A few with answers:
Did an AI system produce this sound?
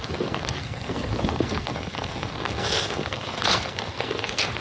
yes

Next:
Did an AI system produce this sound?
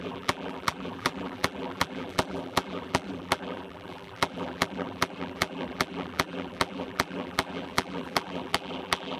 yes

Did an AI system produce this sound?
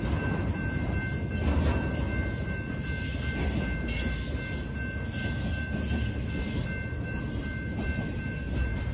no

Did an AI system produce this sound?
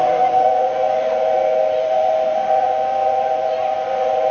yes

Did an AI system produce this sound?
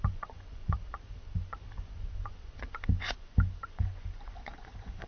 yes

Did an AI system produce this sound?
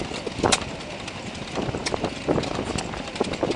no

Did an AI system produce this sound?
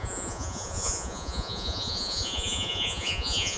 yes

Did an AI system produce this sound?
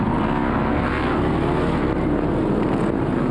no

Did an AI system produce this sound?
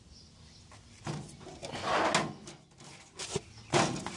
no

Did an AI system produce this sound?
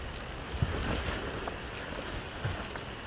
no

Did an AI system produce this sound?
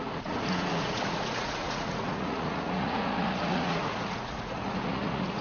yes